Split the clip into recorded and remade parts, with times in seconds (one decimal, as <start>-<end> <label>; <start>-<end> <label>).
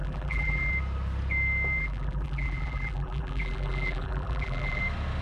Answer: 0.0-0.7 remade; 0.7-1.8 recorded; 1.8-4.8 remade; 4.8-5.2 recorded